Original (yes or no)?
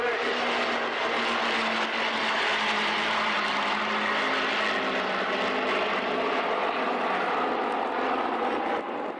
yes